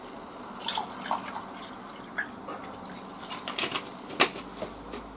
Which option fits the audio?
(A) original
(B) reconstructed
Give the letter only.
A